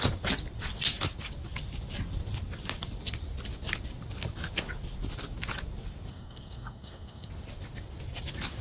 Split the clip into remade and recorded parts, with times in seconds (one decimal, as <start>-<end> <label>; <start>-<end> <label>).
0.0-6.1 recorded; 6.1-7.3 remade; 7.3-8.6 recorded